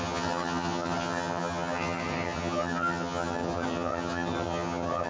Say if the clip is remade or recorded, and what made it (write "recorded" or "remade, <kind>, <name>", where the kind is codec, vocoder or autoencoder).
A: remade, vocoder, HiFi-GAN